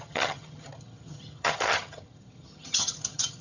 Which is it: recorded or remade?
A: remade